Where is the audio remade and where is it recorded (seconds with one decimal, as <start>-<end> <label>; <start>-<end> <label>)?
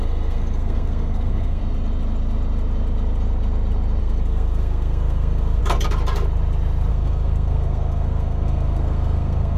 0.0-1.6 remade; 1.6-4.0 recorded; 4.0-5.6 remade; 5.6-6.9 recorded; 6.9-9.6 remade